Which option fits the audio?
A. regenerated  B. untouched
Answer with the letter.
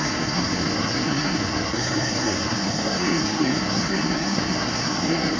A